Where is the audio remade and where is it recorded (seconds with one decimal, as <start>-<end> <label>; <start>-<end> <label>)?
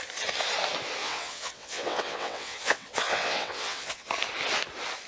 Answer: 0.0-1.0 recorded; 1.0-4.1 remade; 4.1-5.1 recorded